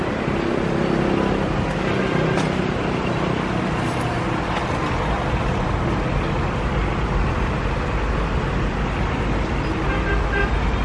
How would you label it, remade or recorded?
recorded